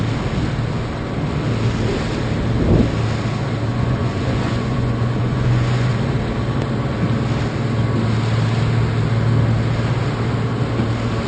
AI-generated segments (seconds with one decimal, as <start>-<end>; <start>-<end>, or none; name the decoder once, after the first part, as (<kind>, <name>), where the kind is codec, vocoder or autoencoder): 3.7-5.9 (vocoder, Vocos)